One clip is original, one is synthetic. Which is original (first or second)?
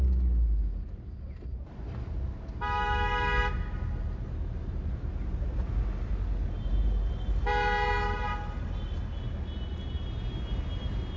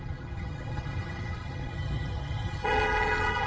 first